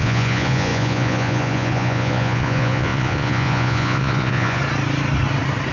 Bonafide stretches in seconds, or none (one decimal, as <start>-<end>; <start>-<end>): 4.6-5.7